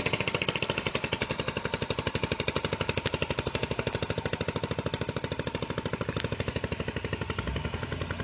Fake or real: real